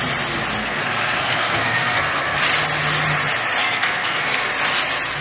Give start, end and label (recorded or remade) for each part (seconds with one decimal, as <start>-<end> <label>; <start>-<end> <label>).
0.0-0.6 recorded; 0.6-2.4 remade; 2.4-3.6 recorded; 3.6-4.5 remade; 4.5-5.2 recorded